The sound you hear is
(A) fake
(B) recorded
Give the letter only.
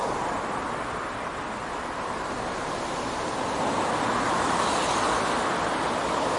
B